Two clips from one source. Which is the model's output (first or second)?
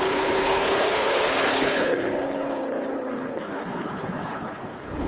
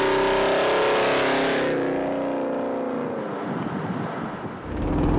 first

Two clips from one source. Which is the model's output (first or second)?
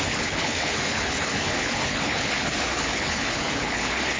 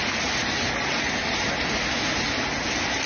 first